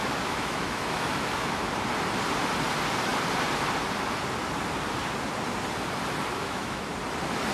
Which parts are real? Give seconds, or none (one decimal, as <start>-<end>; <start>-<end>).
1.7-6.4; 6.9-7.5